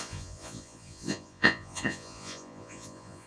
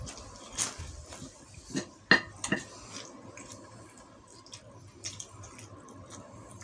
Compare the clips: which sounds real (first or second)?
second